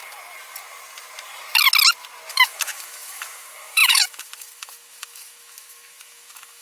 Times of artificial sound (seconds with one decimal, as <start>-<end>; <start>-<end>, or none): 2.3-6.6